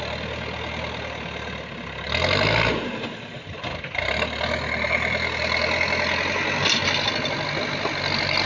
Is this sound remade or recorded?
recorded